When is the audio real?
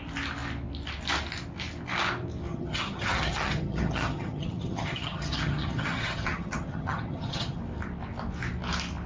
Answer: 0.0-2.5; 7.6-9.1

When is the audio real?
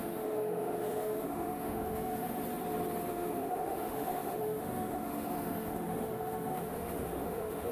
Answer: 2.4-3.1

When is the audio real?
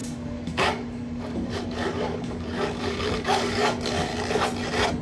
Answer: 4.1-5.0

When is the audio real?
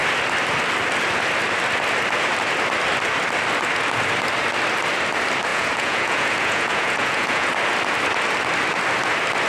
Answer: 0.0-5.5; 7.5-9.5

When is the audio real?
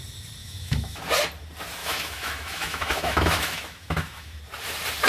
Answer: 0.0-0.4; 1.0-1.8; 4.4-5.1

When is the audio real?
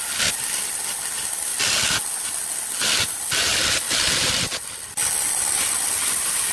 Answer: 0.0-6.5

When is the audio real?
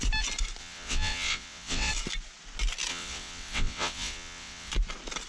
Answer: 0.0-0.6; 1.9-2.9; 4.7-5.3